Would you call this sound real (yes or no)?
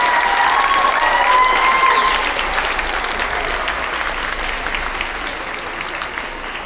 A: yes